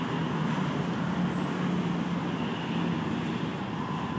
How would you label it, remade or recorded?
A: recorded